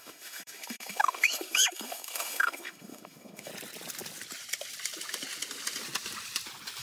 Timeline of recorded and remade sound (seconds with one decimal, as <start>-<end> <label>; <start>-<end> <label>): 0.0-3.5 remade; 3.5-6.8 recorded